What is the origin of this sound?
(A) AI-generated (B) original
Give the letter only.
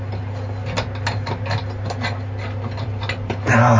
B